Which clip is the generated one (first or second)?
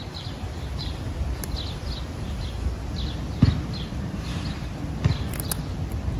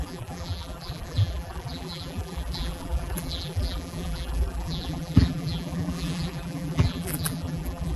second